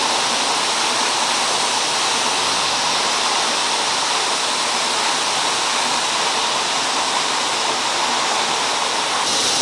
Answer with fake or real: real